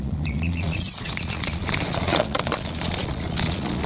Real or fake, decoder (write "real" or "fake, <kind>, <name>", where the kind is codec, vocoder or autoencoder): fake, vocoder, Vocos